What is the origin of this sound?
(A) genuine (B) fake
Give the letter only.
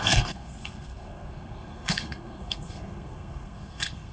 B